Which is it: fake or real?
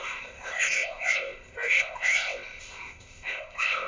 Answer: fake